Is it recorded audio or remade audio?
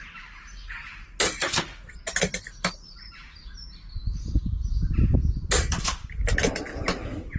recorded